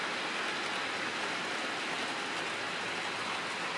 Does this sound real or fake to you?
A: real